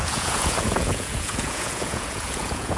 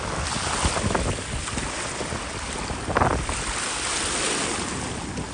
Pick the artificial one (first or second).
first